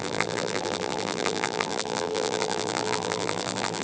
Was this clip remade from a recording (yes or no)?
yes